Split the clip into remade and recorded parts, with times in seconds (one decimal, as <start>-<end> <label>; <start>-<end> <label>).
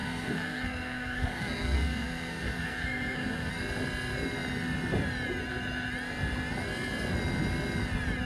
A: 0.0-3.5 remade; 3.5-8.3 recorded